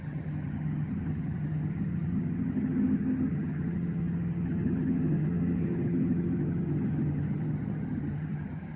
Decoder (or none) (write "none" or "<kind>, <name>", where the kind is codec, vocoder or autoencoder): vocoder, HiFi-GAN